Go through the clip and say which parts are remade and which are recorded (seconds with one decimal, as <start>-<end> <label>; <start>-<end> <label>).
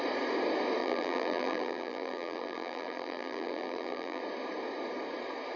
0.0-0.8 recorded; 0.8-4.2 remade; 4.2-5.6 recorded